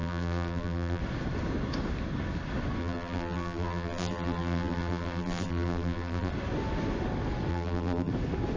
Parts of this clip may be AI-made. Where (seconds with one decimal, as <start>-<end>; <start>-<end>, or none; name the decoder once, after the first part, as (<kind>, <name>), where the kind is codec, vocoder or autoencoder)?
0.0-1.0 (vocoder, BigVGAN v2); 2.8-6.3; 7.5-8.1